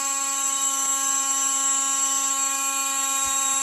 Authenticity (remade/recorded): remade